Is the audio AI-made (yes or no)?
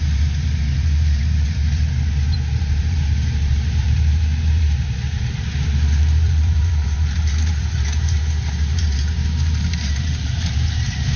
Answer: yes